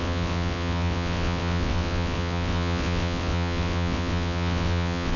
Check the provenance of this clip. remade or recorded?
remade